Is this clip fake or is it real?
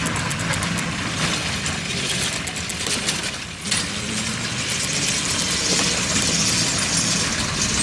real